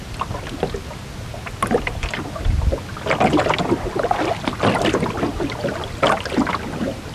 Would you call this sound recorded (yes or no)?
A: yes